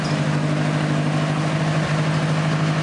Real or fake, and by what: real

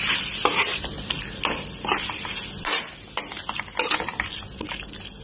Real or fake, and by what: real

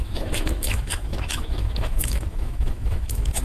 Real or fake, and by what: fake, autoencoder, DAC-VAE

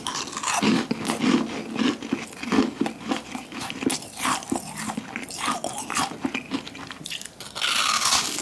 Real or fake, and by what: real